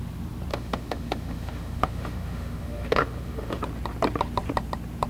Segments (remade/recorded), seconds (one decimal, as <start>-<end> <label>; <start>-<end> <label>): 0.0-0.5 recorded; 0.5-3.6 remade; 3.6-5.1 recorded